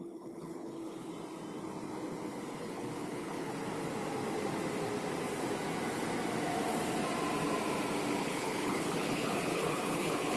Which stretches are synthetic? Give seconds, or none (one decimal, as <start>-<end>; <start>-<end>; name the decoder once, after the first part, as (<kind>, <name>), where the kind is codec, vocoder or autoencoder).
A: 0.0-1.1 (codec, HILCodec); 2.6-3.5; 8.2-10.4